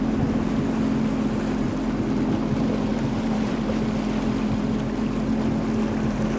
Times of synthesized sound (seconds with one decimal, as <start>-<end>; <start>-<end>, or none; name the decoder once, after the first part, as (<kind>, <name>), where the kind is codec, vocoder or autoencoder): 2.9-3.6 (vocoder, BigVGAN v2)

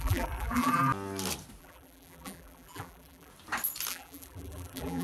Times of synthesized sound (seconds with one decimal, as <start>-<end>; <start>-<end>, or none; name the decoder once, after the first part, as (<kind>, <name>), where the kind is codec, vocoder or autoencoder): 0.0-0.9 (vocoder, BigVGAN v2); 1.6-3.3; 3.9-5.0

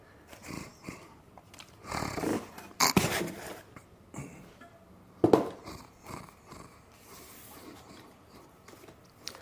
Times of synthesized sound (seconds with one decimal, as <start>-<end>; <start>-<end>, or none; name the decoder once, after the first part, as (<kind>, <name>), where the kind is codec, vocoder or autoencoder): none